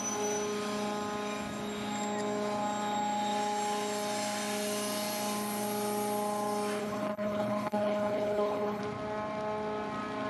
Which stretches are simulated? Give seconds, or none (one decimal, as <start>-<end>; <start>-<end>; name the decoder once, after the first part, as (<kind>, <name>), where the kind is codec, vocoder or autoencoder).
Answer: 6.8-8.8 (codec, HILCodec)